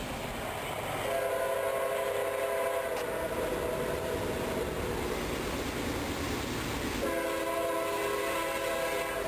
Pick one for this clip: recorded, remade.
recorded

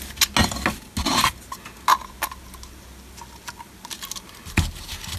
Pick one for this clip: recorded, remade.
recorded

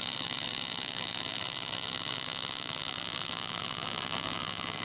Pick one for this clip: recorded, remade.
remade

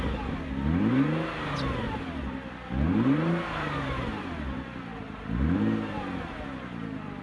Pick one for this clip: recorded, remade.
recorded